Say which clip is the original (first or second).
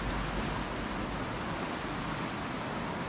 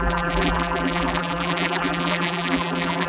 first